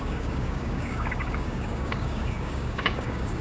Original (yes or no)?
no